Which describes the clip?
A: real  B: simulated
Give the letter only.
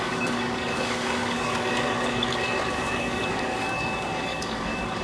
B